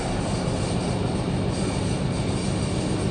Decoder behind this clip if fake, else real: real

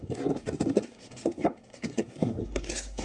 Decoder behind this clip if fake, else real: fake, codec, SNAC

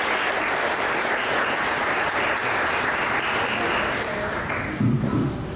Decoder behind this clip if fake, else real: real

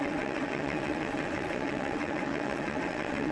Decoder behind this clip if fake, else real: fake, vocoder, WaveNeXt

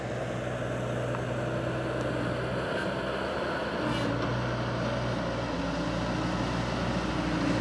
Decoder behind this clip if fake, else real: real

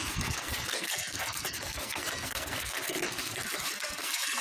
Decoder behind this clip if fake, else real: fake, codec, SNAC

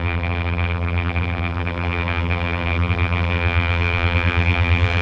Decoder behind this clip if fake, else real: fake, vocoder, BigVGAN v2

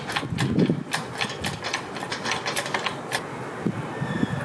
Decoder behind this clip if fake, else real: real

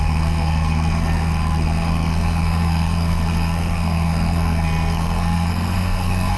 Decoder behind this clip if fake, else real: fake, codec, SNAC